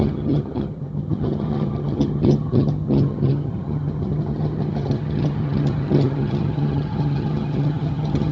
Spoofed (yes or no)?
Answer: yes